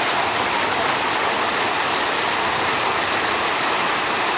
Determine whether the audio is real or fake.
fake